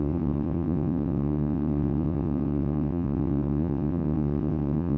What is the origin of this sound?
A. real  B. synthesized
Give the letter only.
B